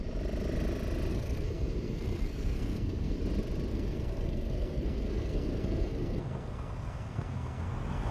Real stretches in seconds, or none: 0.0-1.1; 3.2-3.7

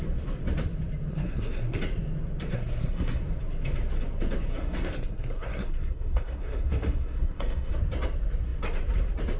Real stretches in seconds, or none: 0.0-1.1; 1.8-2.5; 3.2-4.5; 7.7-9.4

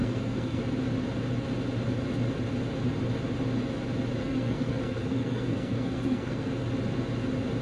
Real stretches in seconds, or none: 0.6-4.2; 6.5-7.6

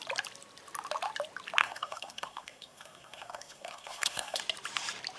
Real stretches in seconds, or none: 0.0-1.6; 4.4-5.2

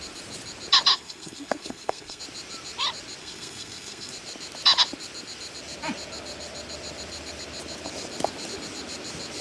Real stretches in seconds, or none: 0.0-0.9; 2.2-3.2; 4.1-9.4